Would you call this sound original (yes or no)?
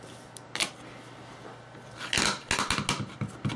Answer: yes